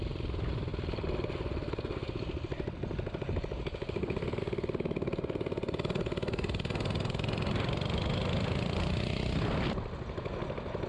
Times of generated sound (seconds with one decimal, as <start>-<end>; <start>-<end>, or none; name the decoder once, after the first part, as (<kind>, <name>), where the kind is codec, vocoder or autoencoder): none